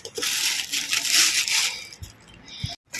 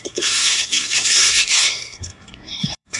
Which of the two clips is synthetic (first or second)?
second